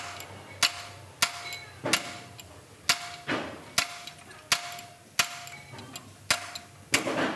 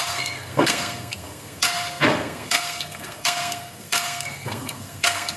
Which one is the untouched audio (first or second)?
first